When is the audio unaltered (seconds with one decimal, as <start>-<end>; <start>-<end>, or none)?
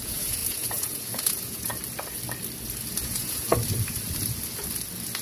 1.7-3.0; 3.5-5.2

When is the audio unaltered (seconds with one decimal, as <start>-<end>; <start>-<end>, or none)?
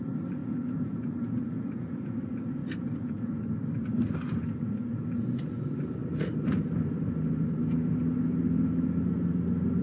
0.0-0.4; 2.1-2.6; 3.5-9.8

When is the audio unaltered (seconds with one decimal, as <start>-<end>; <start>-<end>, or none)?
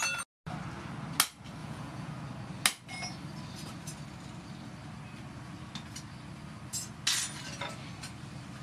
0.0-1.6; 2.1-8.6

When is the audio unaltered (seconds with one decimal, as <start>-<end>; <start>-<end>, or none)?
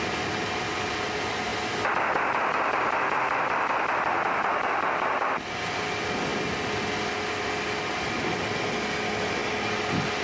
0.0-10.2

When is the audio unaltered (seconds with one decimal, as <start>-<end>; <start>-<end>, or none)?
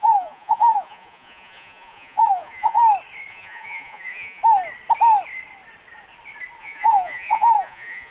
2.8-3.3; 4.4-6.6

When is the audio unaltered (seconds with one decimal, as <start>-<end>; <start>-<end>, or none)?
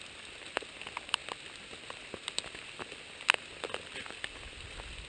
0.0-5.1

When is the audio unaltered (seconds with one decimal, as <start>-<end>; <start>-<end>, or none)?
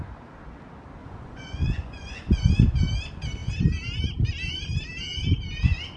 0.0-1.0; 2.5-6.0